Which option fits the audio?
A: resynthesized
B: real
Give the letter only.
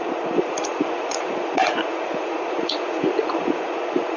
A